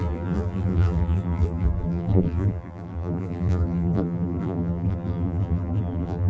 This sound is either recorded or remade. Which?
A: remade